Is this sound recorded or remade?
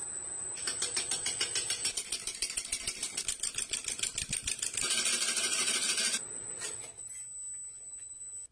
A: recorded